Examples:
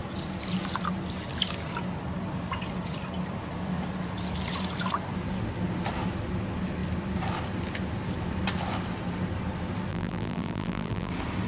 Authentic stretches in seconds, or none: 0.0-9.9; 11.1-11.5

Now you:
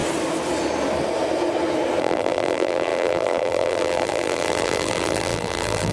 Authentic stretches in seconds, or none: 0.0-2.0

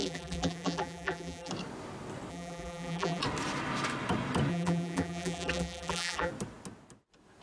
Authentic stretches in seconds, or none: 1.5-2.3; 3.2-4.5; 6.3-7.4